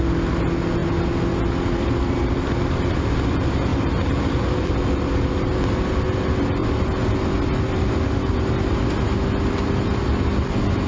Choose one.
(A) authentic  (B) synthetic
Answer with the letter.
A